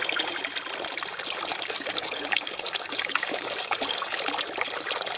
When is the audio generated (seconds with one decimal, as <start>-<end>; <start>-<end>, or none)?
1.5-4.2